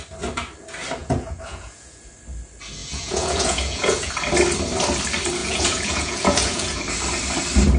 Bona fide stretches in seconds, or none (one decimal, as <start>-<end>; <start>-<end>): 0.0-1.0; 2.1-2.8; 4.1-5.4; 6.8-7.8